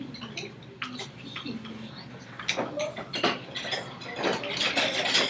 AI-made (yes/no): no